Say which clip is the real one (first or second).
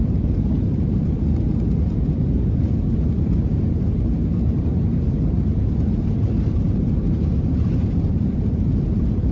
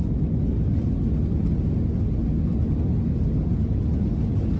second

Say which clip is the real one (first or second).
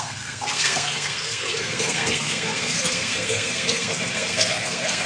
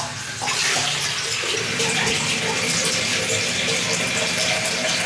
second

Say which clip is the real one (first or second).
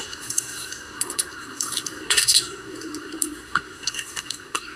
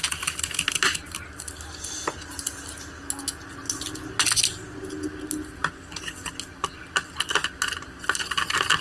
second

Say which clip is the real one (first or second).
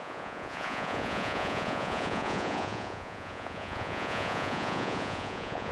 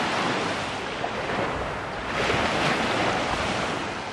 second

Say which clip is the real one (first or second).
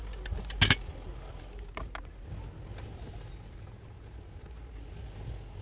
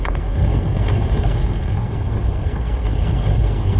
first